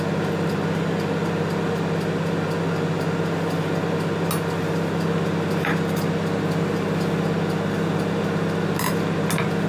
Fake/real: real